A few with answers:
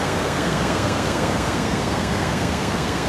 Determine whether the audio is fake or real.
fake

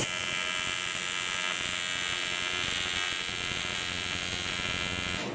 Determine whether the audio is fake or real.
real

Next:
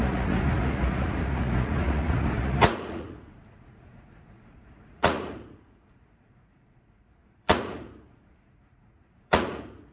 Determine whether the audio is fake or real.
fake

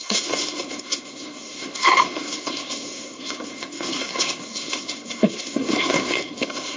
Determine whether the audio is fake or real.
fake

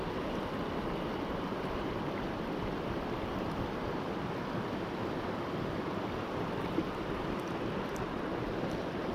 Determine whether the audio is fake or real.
real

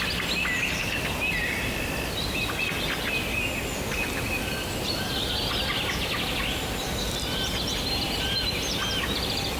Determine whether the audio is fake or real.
real